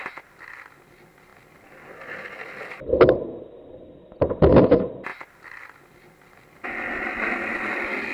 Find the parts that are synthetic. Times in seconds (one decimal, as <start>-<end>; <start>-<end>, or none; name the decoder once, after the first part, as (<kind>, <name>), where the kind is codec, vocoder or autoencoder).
none